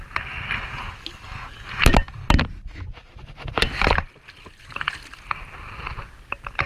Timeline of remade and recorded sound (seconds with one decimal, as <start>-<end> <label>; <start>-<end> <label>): 0.0-6.7 recorded

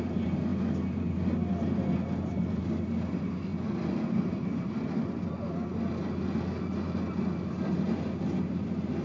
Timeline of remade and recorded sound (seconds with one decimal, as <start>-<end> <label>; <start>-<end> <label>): 0.0-9.0 recorded

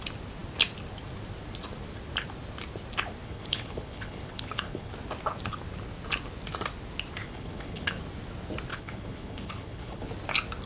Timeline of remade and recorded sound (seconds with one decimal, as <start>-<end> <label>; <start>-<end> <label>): 0.0-3.2 recorded; 3.2-4.9 remade; 4.9-7.2 recorded; 7.2-8.0 remade; 8.0-8.7 recorded; 8.7-10.1 remade; 10.1-10.7 recorded

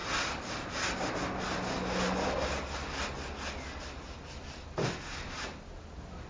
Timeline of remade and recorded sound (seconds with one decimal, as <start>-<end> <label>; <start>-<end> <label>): 0.0-6.3 recorded

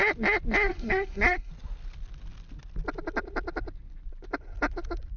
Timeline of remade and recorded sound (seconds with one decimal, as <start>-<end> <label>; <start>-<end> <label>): 0.0-0.7 recorded; 0.7-1.5 remade; 1.5-5.2 recorded

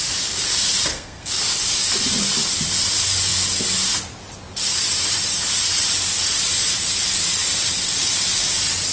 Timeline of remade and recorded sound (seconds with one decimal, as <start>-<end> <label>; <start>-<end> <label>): 0.0-0.9 recorded; 0.9-1.4 remade; 1.4-8.9 recorded